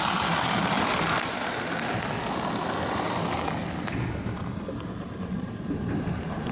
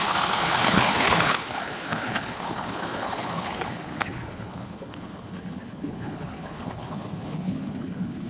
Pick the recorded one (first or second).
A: first